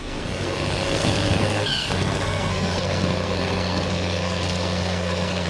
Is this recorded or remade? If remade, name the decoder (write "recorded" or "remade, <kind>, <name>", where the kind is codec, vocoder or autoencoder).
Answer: remade, codec, SNAC